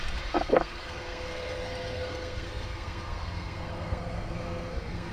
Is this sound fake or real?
fake